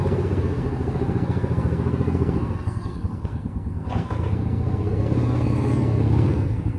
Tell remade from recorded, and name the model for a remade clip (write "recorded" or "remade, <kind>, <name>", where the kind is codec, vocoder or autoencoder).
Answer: remade, codec, SNAC